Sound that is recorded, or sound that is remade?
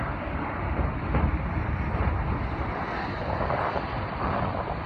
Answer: recorded